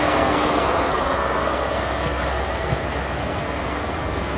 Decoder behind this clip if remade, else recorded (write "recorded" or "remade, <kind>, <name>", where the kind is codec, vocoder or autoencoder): remade, codec, SNAC